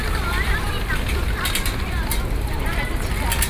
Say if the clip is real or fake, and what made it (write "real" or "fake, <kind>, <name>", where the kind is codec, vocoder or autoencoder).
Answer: real